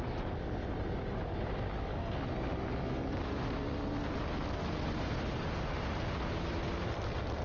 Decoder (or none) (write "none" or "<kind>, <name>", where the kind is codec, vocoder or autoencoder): none